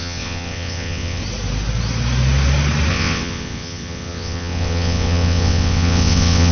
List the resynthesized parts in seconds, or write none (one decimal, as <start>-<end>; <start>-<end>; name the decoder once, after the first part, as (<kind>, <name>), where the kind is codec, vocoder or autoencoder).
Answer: 0.0-1.2 (vocoder, WaveNeXt); 2.9-6.5